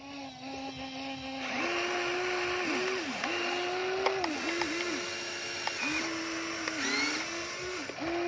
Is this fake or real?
real